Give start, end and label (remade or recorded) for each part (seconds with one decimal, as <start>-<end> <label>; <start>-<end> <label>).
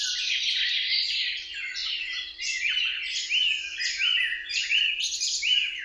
0.0-1.8 remade; 1.8-4.8 recorded; 4.8-5.8 remade